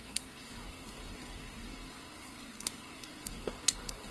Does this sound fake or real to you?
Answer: fake